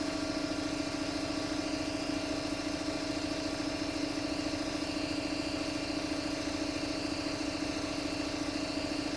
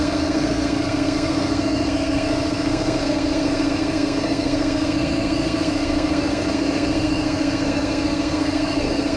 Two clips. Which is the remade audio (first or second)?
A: second